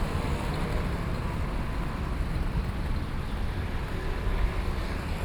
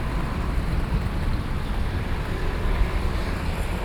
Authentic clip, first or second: first